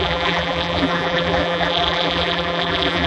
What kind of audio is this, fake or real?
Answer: fake